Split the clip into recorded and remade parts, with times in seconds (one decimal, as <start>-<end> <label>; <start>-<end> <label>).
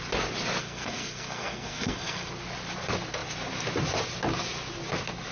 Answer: 0.0-0.6 recorded; 0.6-2.3 remade; 2.3-5.3 recorded